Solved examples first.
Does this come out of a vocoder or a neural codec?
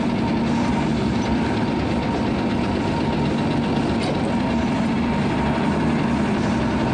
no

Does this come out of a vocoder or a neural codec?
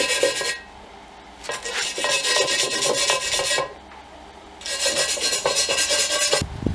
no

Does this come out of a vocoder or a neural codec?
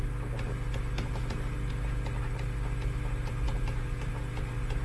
no